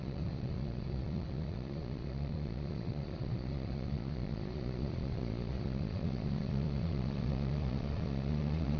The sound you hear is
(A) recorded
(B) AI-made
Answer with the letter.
B